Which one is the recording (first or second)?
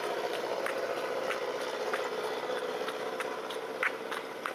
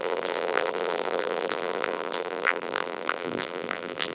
first